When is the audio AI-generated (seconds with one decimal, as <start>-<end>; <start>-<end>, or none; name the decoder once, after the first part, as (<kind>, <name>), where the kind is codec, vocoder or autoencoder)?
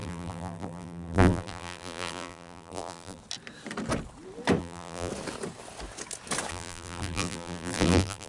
0.0-3.2 (vocoder, BigVGAN v2); 4.6-5.1; 6.5-8.3